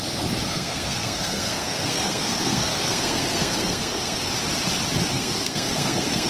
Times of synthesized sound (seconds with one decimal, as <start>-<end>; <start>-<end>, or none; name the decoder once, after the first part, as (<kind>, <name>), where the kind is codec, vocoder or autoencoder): 0.5-4.3 (codec, SNAC); 5.1-6.3